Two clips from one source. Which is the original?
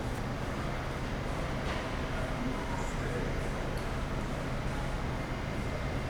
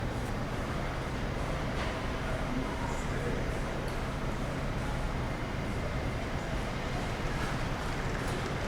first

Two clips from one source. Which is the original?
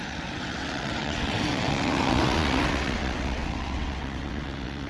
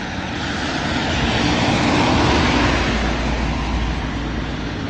second